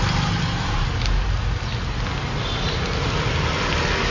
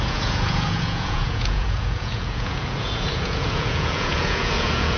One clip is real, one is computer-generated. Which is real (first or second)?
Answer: first